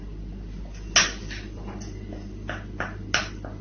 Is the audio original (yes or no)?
yes